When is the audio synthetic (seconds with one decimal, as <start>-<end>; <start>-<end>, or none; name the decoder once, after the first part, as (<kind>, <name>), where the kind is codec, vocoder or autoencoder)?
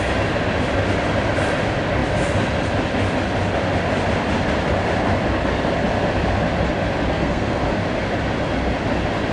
7.1-7.6 (codec, SNAC)